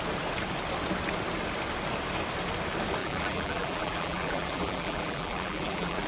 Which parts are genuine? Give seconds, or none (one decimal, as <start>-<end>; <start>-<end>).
0.0-3.0